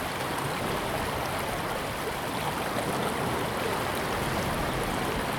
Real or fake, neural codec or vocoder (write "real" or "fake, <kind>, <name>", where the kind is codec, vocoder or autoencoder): real